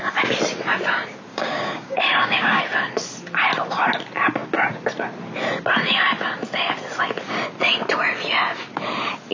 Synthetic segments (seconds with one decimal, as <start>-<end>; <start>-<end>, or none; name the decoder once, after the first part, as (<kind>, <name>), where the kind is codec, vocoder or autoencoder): 1.3-2.6 (codec, DAC)